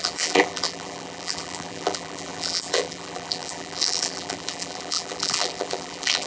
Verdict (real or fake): fake